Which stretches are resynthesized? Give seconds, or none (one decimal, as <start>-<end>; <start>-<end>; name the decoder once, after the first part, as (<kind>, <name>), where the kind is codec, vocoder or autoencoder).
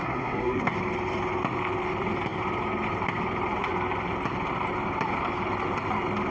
0.0-0.7 (codec, SNAC)